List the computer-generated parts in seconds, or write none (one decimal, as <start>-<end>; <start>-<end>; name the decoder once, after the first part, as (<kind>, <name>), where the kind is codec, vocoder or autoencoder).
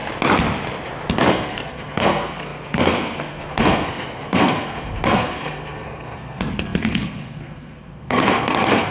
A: 1.3-8.9 (codec, SNAC)